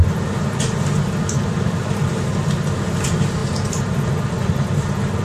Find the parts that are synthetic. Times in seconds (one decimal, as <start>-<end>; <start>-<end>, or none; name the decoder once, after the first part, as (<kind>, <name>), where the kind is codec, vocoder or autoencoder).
none